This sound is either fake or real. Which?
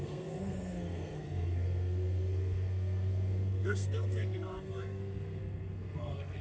fake